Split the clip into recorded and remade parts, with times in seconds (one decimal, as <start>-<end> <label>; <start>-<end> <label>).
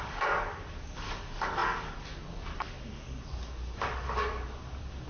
0.0-5.1 remade